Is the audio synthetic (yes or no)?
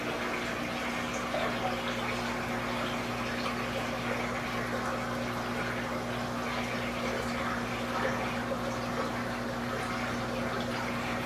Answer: no